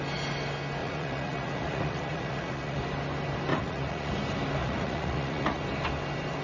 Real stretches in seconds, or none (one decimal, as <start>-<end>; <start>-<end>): 0.0-0.8; 2.8-3.5; 4.1-4.6; 5.6-6.4